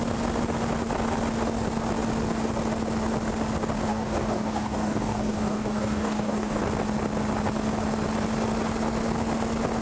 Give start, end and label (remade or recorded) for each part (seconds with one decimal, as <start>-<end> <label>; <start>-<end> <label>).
0.0-3.9 recorded; 3.9-6.6 remade; 6.6-9.8 recorded